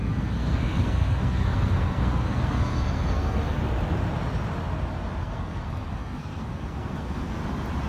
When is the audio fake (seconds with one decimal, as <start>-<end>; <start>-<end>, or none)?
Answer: 0.0-3.6; 5.2-7.4